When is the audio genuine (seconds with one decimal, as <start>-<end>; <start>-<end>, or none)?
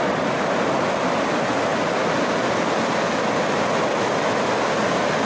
0.0-5.2